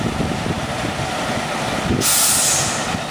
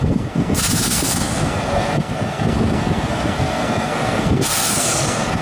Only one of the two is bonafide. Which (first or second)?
first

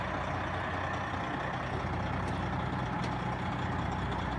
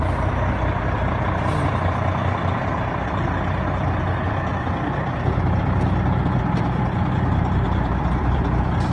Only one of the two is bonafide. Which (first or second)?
first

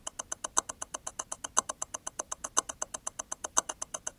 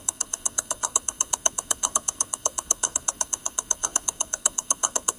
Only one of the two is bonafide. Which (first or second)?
first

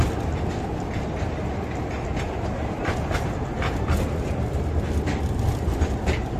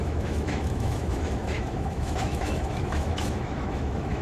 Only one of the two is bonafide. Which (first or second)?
first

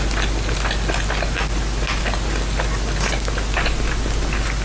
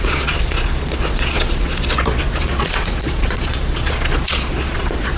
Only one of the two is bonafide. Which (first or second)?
first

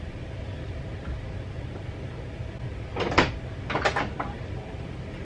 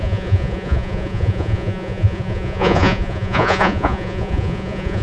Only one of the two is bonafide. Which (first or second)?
first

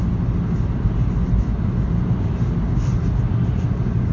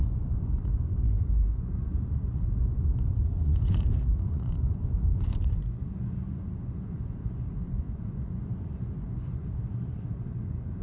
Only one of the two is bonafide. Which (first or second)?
first